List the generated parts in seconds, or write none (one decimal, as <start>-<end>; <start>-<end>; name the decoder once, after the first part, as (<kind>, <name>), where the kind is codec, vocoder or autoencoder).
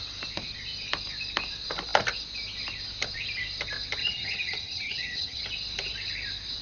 4.0-5.4 (vocoder, HiFi-GAN)